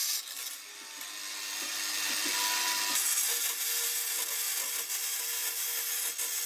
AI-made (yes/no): no